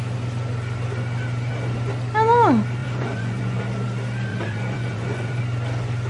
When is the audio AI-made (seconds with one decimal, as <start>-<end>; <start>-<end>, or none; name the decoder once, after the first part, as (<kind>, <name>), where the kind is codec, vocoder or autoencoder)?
2.8-3.6 (vocoder, Vocos); 4.3-5.4